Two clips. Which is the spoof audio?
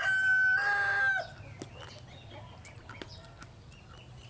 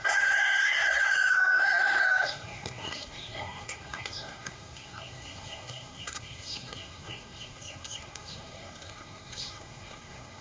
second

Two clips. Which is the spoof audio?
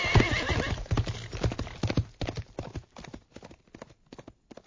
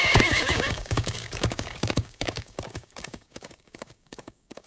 second